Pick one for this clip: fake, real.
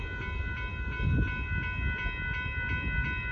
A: real